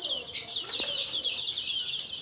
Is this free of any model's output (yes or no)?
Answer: yes